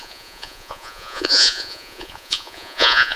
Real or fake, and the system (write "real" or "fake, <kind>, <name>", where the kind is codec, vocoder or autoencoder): fake, vocoder, Vocos